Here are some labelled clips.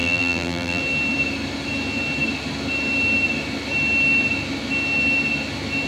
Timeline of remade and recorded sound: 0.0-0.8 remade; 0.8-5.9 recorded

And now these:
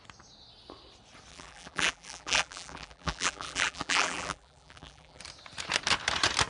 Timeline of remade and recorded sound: 0.0-1.3 recorded; 1.3-5.2 remade; 5.2-6.5 recorded

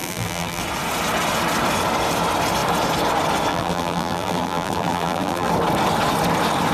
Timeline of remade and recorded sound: 0.0-0.6 remade; 0.6-3.5 recorded; 3.5-5.5 remade; 5.5-6.7 recorded